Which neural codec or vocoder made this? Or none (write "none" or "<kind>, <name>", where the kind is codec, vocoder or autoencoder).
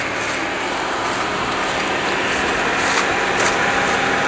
none